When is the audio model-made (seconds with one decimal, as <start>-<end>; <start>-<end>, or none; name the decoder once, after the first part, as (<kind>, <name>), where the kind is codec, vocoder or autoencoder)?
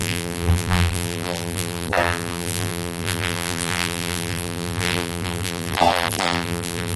0.0-7.0 (vocoder, BigVGAN v2)